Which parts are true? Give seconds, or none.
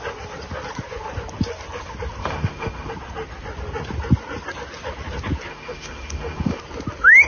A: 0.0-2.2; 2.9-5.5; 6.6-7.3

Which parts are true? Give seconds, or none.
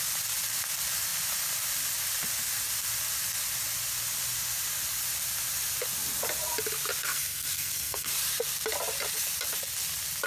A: 0.0-7.0; 8.1-10.3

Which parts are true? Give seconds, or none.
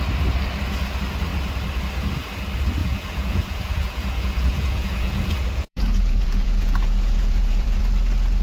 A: 0.0-2.8; 7.8-8.4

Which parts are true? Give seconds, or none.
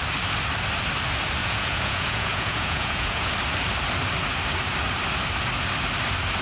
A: 0.0-1.4; 3.3-6.4